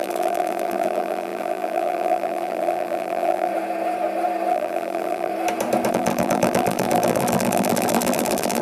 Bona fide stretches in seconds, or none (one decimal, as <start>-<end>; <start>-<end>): 3.5-4.5; 5.3-5.9